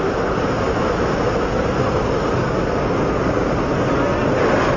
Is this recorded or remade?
recorded